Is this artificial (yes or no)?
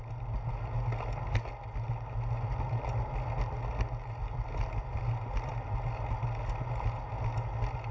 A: no